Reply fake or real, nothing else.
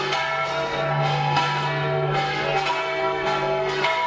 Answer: fake